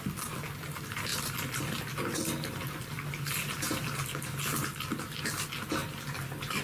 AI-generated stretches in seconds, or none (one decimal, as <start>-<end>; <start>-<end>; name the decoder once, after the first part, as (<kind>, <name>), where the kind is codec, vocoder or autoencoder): none